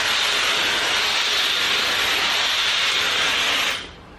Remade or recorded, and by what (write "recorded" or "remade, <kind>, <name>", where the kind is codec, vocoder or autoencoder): recorded